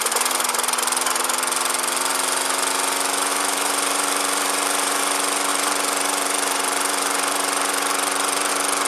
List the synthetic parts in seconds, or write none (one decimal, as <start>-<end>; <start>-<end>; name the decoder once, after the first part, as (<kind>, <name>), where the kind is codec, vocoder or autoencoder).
3.3-5.0 (vocoder, BigVGAN v2); 5.5-8.5